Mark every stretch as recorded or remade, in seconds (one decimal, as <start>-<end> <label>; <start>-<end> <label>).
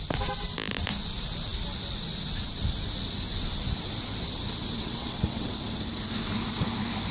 0.0-4.8 recorded; 4.8-5.5 remade; 5.5-7.1 recorded